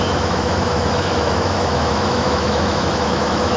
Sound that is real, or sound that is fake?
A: fake